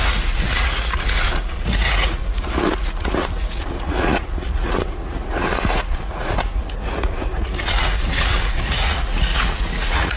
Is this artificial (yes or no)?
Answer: yes